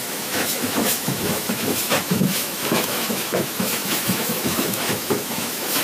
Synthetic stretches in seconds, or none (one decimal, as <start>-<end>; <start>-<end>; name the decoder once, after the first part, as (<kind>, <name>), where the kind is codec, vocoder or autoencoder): 0.0-5.8 (autoencoder, DAC-VAE)